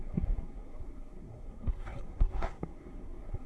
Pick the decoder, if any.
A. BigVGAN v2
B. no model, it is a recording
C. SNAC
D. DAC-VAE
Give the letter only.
C